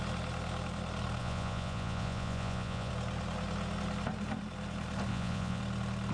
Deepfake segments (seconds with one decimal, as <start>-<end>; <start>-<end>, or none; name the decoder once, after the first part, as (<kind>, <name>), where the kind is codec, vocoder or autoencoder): 1.2-2.9 (vocoder, Vocos); 5.1-5.6